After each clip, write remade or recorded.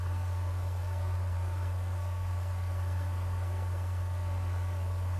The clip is remade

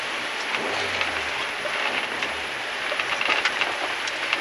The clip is remade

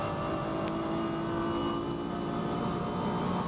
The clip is recorded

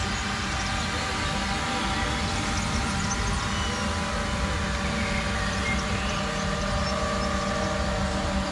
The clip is recorded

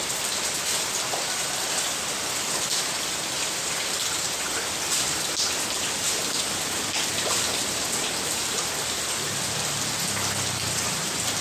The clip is remade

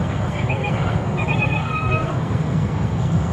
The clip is remade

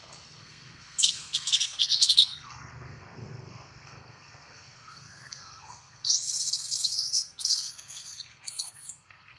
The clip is remade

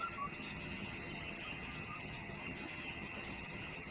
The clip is remade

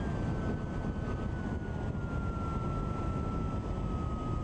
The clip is recorded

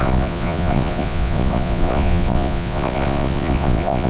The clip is remade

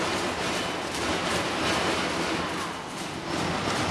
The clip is recorded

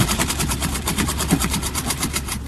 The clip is remade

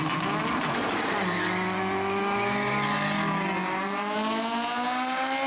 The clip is recorded